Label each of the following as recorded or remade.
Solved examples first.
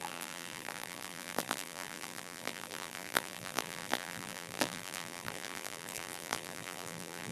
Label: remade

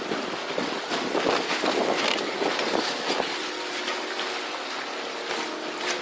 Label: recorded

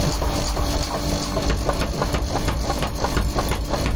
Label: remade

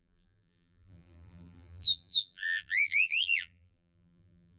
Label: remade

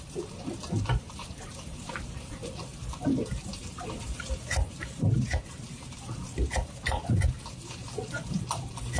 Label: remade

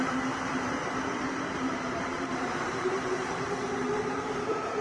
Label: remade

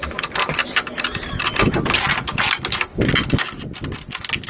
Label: recorded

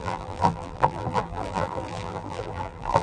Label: remade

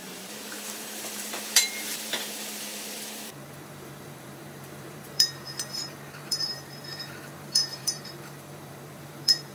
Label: remade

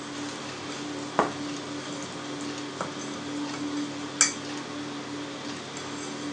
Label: recorded